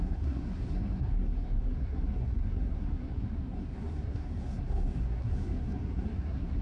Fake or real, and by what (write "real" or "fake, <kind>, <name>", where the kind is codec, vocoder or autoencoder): fake, codec, SNAC